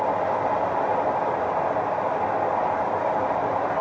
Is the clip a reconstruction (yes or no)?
no